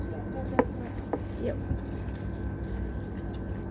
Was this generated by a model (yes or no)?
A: no